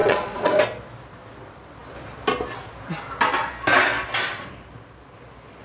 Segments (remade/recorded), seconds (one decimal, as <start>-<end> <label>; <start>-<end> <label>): 0.0-0.6 remade; 0.6-5.6 recorded